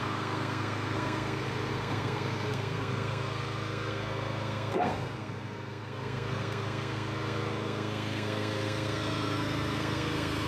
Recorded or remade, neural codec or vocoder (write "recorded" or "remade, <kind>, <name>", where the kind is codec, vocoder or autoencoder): remade, codec, SNAC